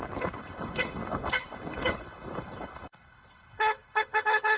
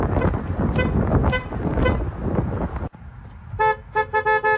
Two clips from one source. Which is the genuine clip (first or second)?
second